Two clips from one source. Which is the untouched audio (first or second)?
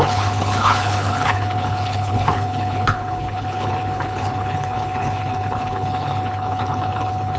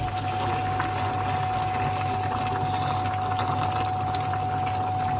second